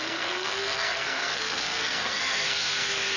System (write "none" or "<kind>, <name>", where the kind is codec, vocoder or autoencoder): codec, SNAC